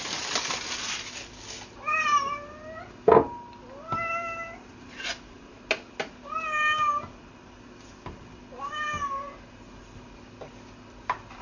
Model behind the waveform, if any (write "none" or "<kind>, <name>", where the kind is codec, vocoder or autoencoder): none